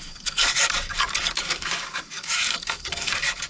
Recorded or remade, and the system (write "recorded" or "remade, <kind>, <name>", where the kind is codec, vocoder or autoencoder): remade, codec, DAC